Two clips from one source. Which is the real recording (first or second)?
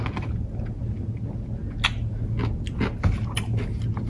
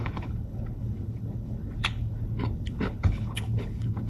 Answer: first